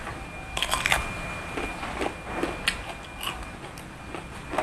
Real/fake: real